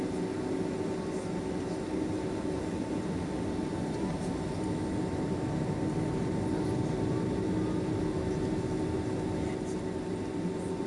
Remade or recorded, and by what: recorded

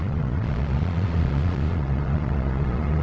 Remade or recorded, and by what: remade, vocoder, Vocos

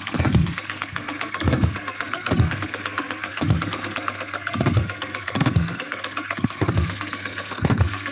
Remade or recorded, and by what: remade, codec, SNAC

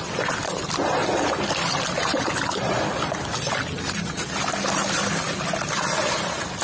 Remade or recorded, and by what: recorded